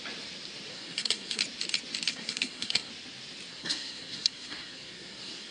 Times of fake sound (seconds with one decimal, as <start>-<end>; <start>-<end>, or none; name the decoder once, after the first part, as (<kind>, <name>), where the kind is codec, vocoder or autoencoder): 0.7-1.4 (codec, SNAC); 2.1-2.9; 3.5-5.5